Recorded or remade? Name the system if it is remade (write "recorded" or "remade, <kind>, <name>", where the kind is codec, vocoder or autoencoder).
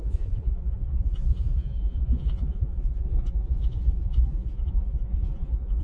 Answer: remade, vocoder, Vocos